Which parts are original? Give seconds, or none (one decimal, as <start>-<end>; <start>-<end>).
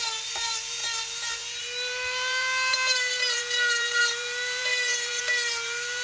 0.8-1.6